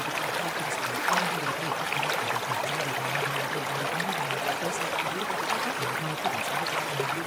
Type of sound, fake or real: real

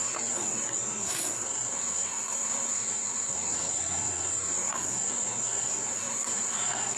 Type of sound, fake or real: fake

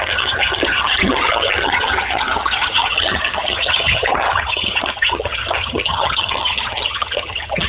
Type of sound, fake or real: fake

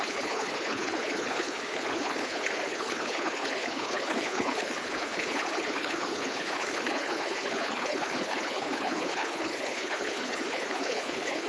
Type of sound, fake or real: fake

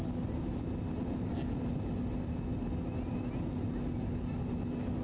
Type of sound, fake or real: real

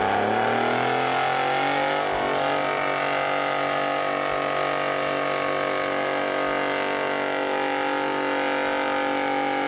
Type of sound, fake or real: real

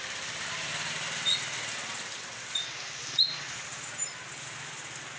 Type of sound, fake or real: real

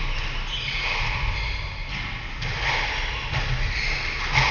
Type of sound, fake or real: real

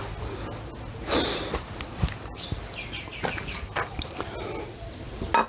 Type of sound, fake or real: real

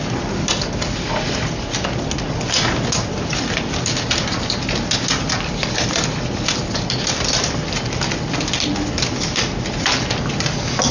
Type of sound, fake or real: real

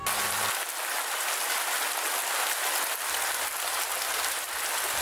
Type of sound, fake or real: real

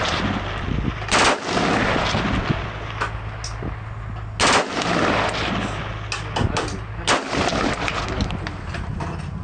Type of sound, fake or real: real